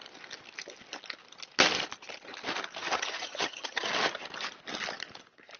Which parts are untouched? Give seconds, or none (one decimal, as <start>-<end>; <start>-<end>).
0.0-2.8; 3.9-5.6